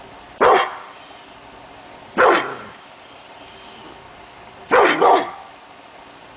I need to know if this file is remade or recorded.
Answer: recorded